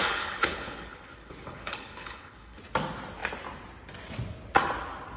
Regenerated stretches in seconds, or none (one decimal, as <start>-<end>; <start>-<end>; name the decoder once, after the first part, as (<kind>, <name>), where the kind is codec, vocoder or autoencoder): 0.0-2.6 (codec, HILCodec)